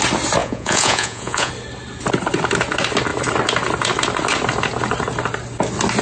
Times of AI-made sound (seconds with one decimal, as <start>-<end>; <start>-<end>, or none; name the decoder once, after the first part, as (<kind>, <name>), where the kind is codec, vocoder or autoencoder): 0.4-1.5 (vocoder, Vocos)